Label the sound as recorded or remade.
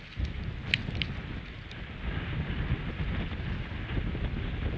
recorded